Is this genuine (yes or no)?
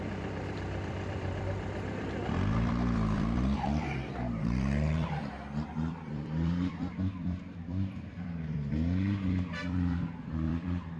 no